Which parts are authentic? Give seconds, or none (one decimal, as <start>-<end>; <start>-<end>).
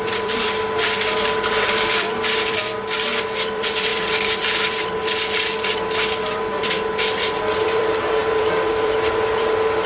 2.7-3.2